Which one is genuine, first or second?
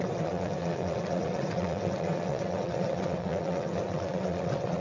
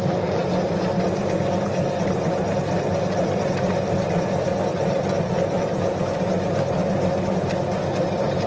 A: second